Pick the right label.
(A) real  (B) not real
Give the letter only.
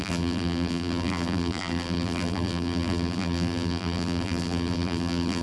B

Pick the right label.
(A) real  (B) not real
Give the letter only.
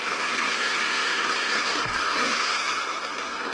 B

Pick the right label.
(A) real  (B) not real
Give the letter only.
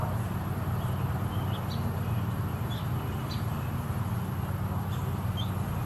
A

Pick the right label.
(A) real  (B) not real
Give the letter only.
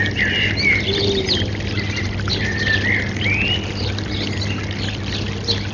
A